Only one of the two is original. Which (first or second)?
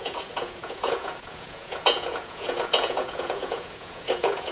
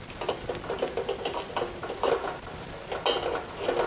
second